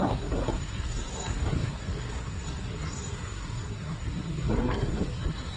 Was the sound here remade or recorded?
remade